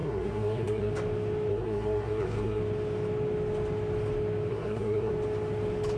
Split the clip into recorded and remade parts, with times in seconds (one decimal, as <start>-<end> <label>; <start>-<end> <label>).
0.0-0.9 remade; 0.9-1.5 recorded; 1.5-2.6 remade; 2.6-4.5 recorded; 4.5-5.1 remade; 5.1-6.0 recorded